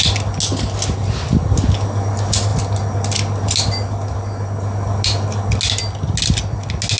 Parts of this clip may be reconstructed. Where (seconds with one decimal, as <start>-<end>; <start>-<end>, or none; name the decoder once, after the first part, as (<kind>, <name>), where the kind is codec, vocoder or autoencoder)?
none